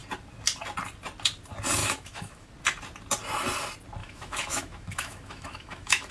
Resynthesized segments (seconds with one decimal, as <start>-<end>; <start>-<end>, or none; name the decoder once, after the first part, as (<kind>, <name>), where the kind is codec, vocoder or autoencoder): 1.8-2.5 (autoencoder, DAC-VAE); 4.0-6.1